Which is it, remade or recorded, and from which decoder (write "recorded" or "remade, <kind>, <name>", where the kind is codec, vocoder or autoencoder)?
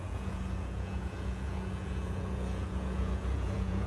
remade, vocoder, Vocos